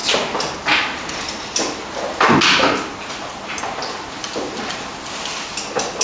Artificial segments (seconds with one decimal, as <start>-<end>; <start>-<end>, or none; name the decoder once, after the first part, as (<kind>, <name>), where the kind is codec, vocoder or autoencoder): none